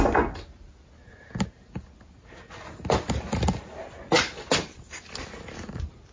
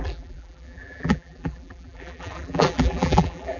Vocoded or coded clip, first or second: second